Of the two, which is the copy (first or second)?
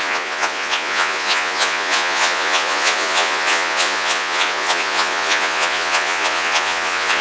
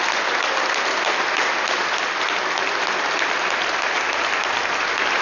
first